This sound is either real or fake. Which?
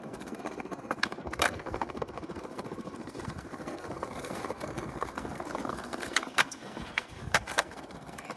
fake